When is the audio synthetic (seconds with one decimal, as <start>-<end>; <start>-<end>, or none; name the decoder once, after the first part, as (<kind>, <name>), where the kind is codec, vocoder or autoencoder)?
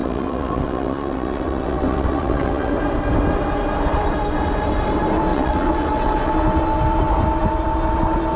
0.0-2.7 (vocoder, WaveNeXt); 5.3-6.3